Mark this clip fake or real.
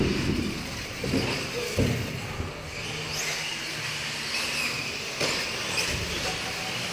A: real